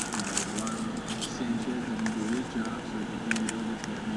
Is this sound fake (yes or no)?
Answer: no